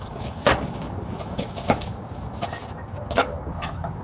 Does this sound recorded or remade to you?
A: remade